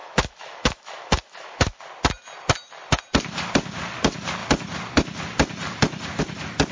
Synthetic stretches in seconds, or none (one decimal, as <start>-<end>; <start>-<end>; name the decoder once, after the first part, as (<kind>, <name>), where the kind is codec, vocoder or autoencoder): 0.0-1.8 (autoencoder, DAC-VAE)